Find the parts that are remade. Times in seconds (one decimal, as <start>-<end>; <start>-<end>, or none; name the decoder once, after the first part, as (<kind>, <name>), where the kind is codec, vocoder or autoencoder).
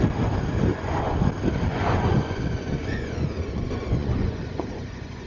0.7-1.2 (vocoder, Vocos); 1.7-5.3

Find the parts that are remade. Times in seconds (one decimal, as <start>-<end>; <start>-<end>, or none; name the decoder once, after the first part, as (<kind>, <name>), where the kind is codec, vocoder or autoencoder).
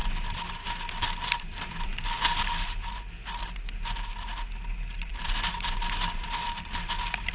1.0-4.3 (vocoder, BigVGAN v2); 5.1-7.3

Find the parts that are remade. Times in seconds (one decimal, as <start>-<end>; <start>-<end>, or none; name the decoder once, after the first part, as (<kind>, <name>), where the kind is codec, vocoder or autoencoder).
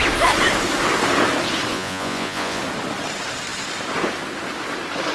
1.7-2.6 (vocoder, Vocos)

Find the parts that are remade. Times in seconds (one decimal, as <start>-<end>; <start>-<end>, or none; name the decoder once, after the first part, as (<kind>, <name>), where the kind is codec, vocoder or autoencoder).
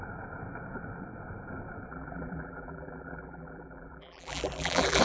1.9-5.0 (vocoder, BigVGAN v2)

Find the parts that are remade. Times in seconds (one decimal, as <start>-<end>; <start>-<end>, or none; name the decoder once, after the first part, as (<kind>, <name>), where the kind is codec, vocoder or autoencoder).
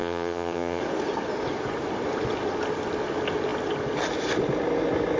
0.0-0.8 (vocoder, HiFi-GAN)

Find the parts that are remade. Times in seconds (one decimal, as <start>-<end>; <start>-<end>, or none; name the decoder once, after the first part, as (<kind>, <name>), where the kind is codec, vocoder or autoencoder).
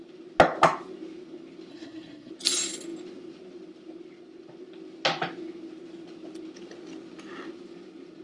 1.7-2.3 (codec, SNAC)